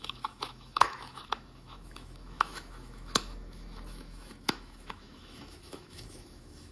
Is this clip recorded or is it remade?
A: remade